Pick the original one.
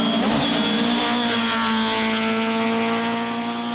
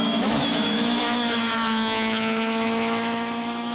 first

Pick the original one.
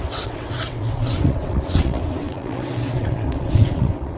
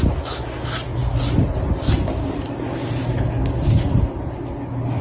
second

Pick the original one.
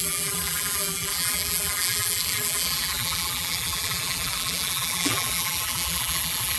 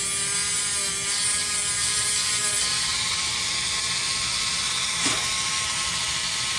second